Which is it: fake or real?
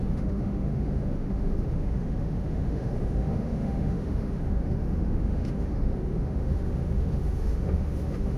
fake